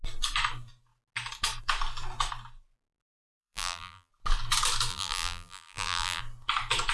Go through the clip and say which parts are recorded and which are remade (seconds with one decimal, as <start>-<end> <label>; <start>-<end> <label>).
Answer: 0.0-3.1 recorded; 3.1-4.1 remade; 4.1-4.9 recorded; 4.9-6.2 remade; 6.2-6.9 recorded